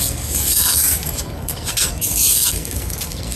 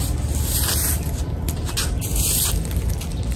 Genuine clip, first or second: second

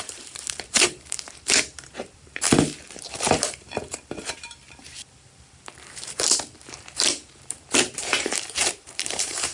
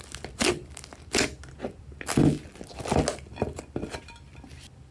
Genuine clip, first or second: second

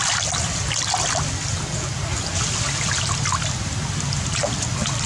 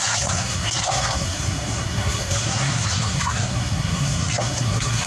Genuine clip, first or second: first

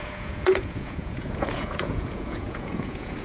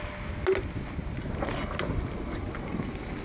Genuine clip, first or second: second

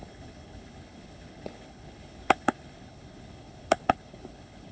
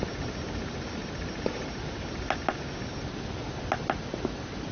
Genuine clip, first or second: second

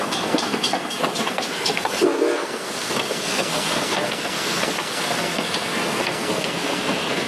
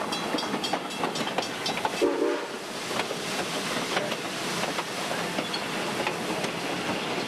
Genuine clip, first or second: second